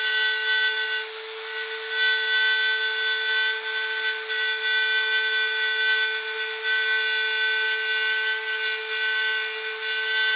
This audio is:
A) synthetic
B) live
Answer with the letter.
B